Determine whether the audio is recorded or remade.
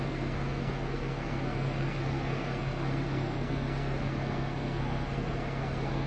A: remade